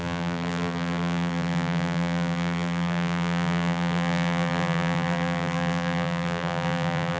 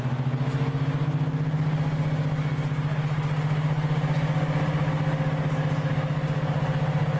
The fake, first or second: first